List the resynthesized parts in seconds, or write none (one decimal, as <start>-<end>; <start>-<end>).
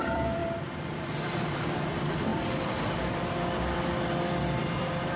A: 0.0-2.3; 3.1-5.2